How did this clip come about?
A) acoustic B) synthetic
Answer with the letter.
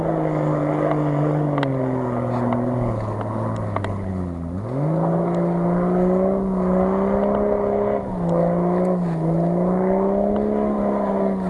A